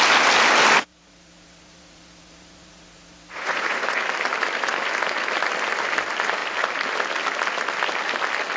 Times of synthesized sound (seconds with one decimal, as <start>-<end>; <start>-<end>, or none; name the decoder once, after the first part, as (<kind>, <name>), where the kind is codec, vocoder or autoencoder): 0.9-4.0 (vocoder, Vocos)